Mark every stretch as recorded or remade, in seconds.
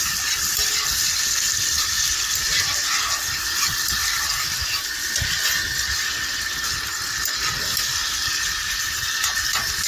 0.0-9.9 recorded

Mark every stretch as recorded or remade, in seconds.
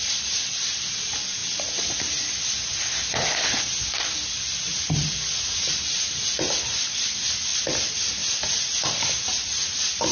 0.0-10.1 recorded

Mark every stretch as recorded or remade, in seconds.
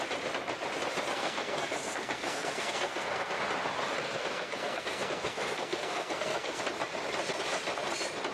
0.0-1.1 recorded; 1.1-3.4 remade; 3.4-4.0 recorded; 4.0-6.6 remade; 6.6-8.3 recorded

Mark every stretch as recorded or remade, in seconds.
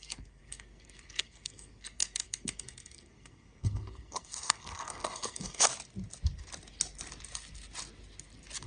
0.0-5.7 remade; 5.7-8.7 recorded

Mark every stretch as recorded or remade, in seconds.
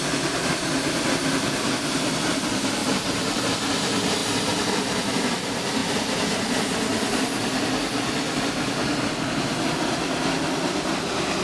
0.0-2.8 recorded; 2.8-3.4 remade; 3.4-11.4 recorded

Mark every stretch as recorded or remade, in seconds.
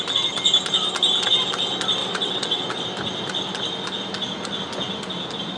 0.0-2.0 recorded; 2.0-2.6 remade; 2.6-5.6 recorded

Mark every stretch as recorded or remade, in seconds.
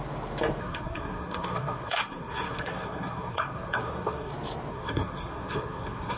0.0-0.6 recorded; 0.6-4.3 remade; 4.3-4.7 recorded; 4.7-6.2 remade